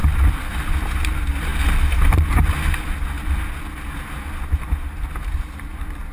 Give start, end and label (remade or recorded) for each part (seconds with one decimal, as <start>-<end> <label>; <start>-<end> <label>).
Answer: 0.0-0.6 remade; 0.6-6.1 recorded